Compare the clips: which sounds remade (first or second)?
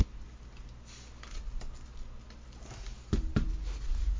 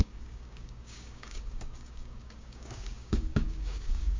second